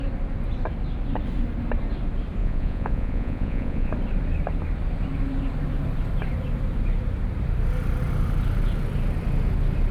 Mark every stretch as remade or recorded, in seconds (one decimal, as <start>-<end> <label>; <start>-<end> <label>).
0.0-2.4 recorded; 2.4-3.9 remade; 3.9-9.9 recorded